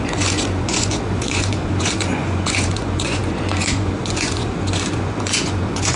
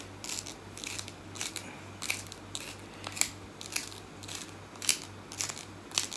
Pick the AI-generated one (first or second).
first